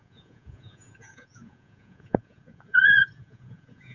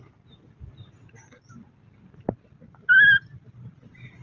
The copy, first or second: first